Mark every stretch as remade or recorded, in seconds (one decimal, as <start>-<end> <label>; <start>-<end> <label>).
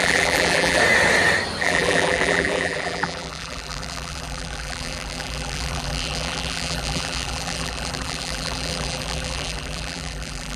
0.0-0.8 remade; 0.8-1.6 recorded; 1.6-10.6 remade